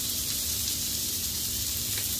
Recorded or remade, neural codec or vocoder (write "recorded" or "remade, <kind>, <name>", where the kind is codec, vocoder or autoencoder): recorded